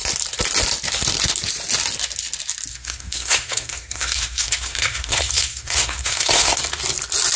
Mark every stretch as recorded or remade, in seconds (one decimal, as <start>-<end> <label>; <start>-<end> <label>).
0.0-2.7 recorded; 2.7-6.6 remade; 6.6-7.4 recorded